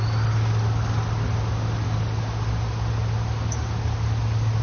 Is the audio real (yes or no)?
yes